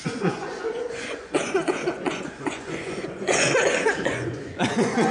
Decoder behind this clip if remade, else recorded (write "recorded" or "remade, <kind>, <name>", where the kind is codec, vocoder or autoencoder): remade, vocoder, Vocos